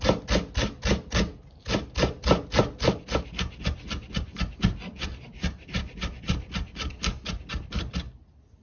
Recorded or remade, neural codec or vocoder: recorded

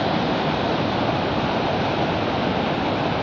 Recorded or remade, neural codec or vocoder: recorded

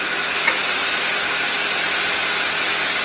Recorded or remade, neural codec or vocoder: recorded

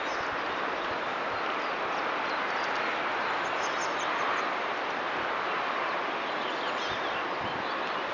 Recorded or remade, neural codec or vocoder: recorded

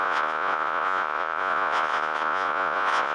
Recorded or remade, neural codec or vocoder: remade, vocoder, Vocos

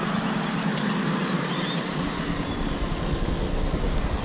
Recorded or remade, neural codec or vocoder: recorded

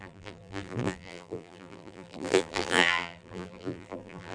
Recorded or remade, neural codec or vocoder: remade, vocoder, BigVGAN v2